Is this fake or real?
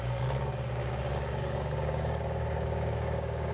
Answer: fake